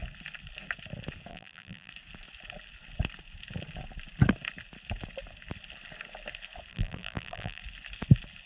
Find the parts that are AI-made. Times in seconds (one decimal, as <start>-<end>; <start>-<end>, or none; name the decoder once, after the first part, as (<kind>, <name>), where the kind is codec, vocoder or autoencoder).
1.3-1.9 (vocoder, BigVGAN v2); 6.7-7.6